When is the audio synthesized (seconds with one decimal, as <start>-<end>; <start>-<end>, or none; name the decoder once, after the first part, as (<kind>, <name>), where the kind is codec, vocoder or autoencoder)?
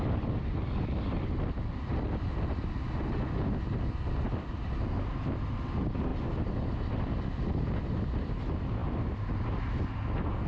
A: none